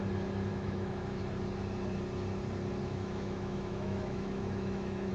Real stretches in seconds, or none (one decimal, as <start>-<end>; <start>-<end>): 0.0-0.5; 1.2-2.8